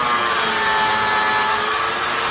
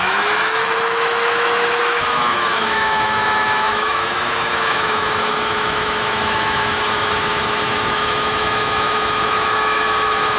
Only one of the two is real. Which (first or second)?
first